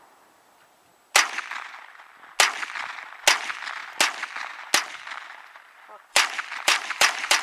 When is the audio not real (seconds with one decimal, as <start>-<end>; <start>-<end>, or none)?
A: 0.0-0.9; 3.4-3.8; 4.9-7.4

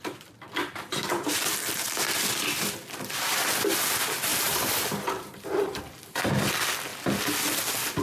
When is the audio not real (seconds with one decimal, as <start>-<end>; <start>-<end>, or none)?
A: 0.6-1.5; 4.3-5.8

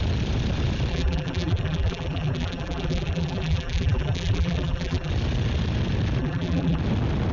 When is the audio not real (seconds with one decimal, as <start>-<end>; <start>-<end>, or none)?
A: 0.9-5.1; 6.2-6.8

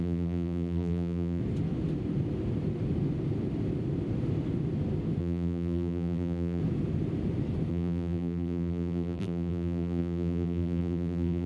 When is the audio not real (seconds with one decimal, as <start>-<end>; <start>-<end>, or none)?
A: 0.0-1.4; 5.2-6.6; 7.7-11.5

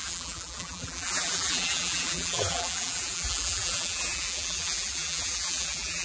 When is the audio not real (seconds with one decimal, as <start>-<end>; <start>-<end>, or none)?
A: 0.0-6.0

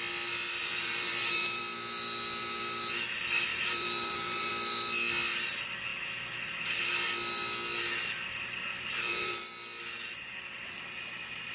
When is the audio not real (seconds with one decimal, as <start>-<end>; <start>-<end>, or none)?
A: 0.6-1.6; 3.5-4.5; 8.7-9.5

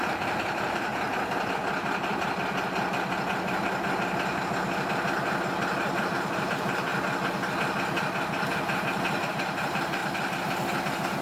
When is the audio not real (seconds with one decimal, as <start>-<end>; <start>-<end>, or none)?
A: 0.0-0.9; 6.0-6.9; 9.3-10.0

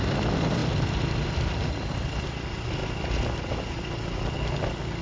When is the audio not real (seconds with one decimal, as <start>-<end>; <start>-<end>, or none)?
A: none